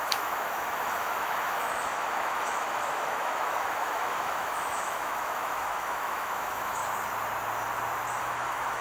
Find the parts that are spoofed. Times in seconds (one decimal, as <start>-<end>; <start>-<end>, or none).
0.0-6.8; 8.2-8.8